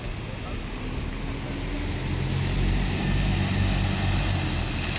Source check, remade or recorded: recorded